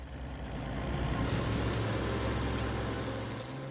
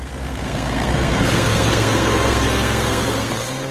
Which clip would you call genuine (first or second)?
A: first